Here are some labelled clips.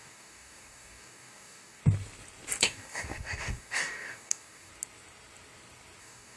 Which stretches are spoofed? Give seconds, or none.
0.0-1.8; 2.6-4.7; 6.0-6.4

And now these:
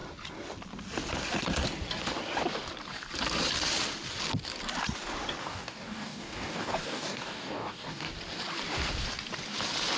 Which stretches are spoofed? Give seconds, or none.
5.4-8.1

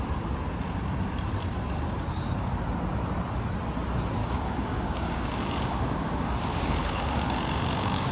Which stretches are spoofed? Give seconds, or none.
4.2-8.1

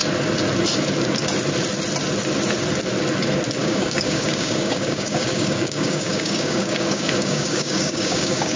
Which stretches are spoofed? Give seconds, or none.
3.6-8.6

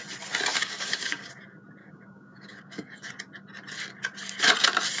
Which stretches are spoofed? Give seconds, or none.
0.5-1.3; 1.8-3.1

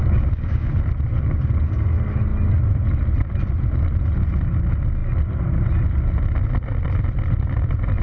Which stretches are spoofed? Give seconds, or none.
0.0-0.7

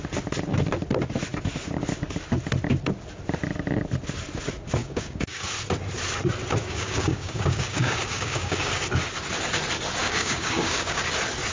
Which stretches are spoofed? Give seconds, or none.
4.8-5.4; 6.6-8.7; 10.0-11.0

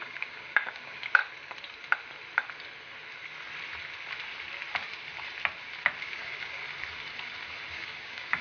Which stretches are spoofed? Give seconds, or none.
0.0-1.2; 6.0-6.6; 7.7-8.4